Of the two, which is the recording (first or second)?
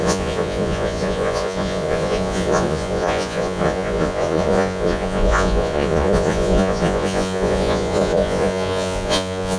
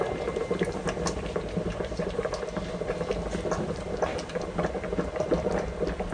second